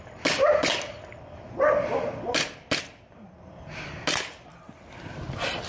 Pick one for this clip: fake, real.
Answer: real